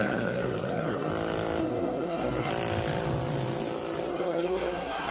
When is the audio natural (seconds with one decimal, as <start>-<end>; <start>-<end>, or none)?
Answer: 1.1-1.6; 2.5-4.1